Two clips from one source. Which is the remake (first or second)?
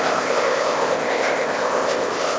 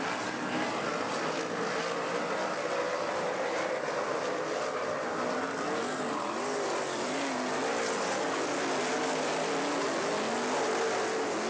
first